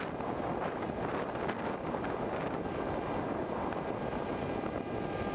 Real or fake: real